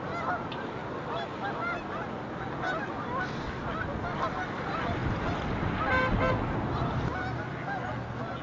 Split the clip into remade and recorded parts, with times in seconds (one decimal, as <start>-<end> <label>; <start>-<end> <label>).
0.0-8.4 recorded